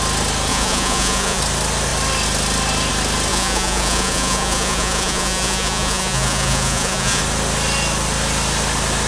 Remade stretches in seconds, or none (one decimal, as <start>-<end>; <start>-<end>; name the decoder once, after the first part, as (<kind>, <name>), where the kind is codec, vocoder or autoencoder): 0.5-1.4 (vocoder, Vocos); 3.3-7.2